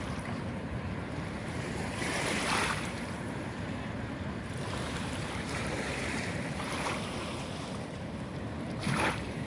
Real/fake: fake